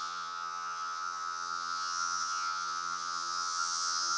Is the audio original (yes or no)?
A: no